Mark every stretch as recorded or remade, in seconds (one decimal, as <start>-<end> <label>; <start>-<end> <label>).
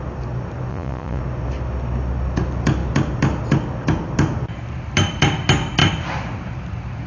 0.0-0.7 recorded; 0.7-1.2 remade; 1.2-7.1 recorded